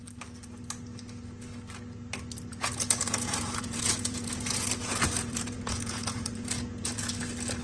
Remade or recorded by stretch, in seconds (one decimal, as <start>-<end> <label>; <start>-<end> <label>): 0.0-2.5 recorded; 2.5-7.1 remade; 7.1-7.6 recorded